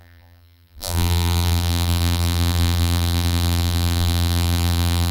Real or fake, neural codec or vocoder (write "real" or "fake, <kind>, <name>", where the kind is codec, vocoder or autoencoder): fake, vocoder, BigVGAN v2